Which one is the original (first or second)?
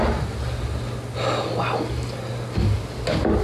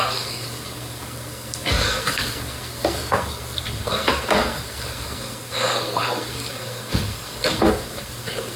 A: first